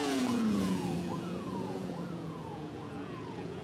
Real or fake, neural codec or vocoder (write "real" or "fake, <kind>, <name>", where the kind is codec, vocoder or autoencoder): fake, vocoder, Vocos